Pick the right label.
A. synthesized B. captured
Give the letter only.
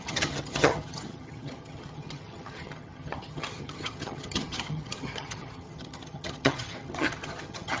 A